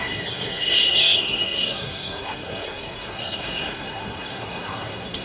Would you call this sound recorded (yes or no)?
no